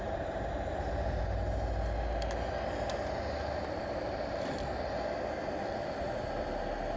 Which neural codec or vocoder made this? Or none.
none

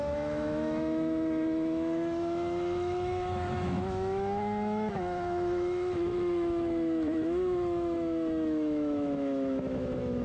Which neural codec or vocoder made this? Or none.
autoencoder, DAC-VAE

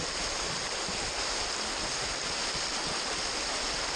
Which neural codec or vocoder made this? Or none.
none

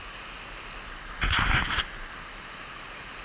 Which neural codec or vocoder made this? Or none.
none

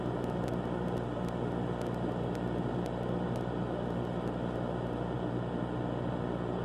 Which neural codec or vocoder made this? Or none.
none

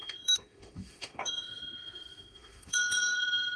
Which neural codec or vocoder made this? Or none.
autoencoder, DAC-VAE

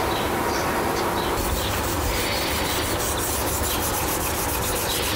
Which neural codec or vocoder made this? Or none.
none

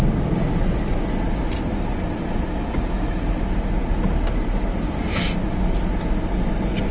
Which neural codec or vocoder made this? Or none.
none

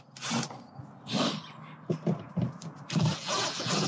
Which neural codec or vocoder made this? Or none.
none